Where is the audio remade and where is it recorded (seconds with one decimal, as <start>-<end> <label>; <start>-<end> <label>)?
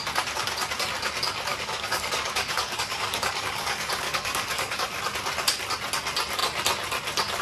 0.0-1.5 recorded; 1.5-5.0 remade; 5.0-7.4 recorded